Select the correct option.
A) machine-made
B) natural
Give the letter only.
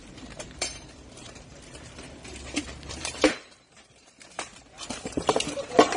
A